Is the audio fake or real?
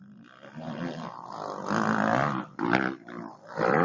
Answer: real